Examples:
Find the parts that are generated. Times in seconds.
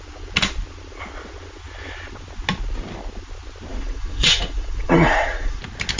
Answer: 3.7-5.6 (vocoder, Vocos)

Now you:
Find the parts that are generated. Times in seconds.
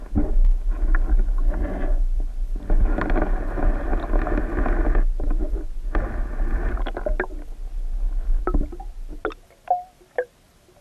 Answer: none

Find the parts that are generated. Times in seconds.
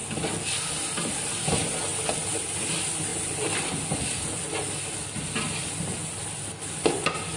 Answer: none